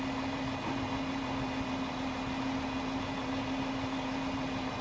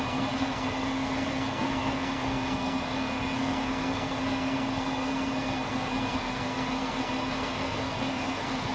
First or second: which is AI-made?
second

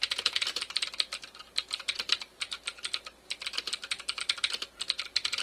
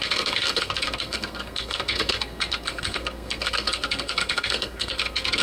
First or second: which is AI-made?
second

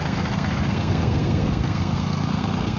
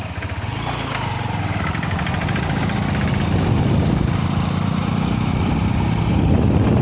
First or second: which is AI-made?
first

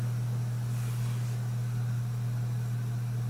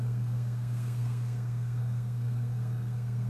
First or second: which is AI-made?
second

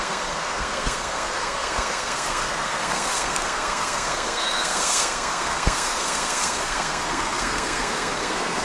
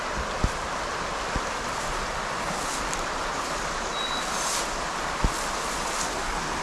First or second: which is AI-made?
first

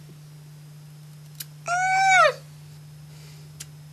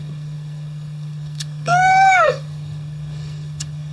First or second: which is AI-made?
second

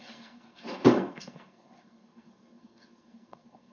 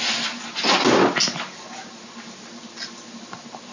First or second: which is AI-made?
first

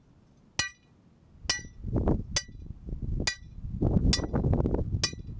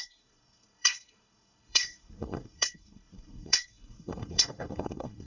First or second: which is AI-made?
second